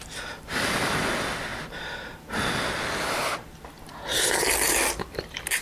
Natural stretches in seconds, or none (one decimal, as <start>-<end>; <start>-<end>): 1.5-4.9